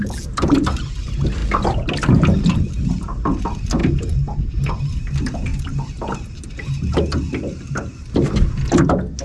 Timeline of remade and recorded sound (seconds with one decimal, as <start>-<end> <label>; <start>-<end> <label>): 0.0-9.2 recorded